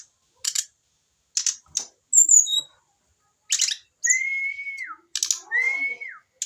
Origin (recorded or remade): recorded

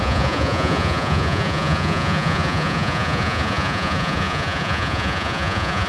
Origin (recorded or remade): remade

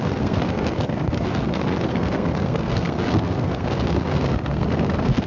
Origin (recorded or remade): remade